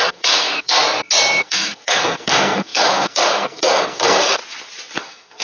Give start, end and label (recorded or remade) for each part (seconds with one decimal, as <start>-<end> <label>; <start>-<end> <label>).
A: 0.0-0.8 remade; 0.8-1.4 recorded; 1.4-4.4 remade; 4.4-5.0 recorded; 5.0-5.4 remade